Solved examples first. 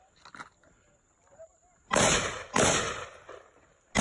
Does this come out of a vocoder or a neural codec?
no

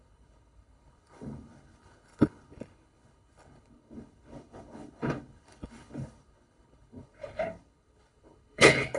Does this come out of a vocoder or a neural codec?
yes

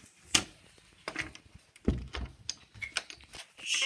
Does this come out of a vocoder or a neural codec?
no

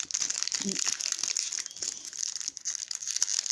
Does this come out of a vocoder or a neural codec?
no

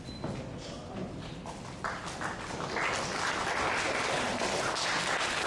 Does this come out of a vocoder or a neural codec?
no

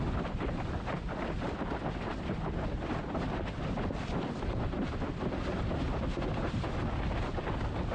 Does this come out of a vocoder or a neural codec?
no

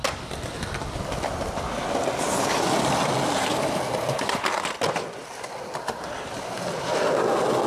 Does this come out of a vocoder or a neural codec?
no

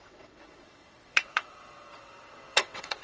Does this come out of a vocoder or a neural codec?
yes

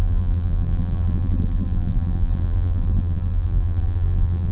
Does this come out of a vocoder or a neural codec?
yes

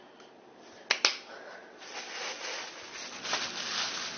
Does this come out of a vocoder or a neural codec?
no